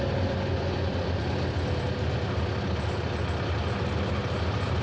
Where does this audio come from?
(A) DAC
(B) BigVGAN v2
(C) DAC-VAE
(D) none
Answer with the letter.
D